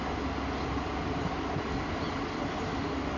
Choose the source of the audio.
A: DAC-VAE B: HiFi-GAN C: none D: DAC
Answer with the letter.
C